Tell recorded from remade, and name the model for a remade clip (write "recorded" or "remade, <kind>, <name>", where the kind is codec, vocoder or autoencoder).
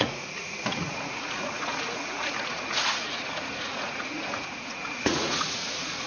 remade, vocoder, Vocos